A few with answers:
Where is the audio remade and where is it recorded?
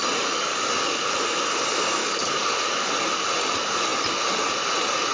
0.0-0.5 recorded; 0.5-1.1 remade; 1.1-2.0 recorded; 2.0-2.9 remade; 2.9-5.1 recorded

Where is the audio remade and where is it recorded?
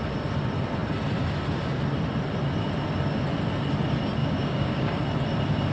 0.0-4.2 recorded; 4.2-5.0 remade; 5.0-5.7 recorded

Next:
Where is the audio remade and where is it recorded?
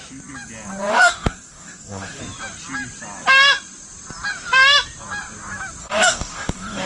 0.0-0.9 recorded; 0.9-2.2 remade; 2.2-5.8 recorded; 5.8-6.9 remade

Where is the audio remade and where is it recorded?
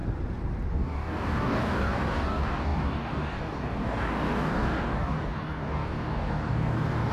0.0-0.7 recorded; 0.7-7.1 remade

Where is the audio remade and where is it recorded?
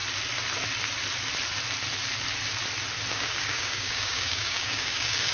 0.0-3.1 recorded; 3.1-5.3 remade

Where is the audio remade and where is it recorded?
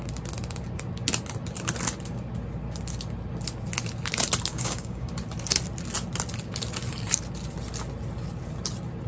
0.0-4.5 recorded; 4.5-5.1 remade; 5.1-9.1 recorded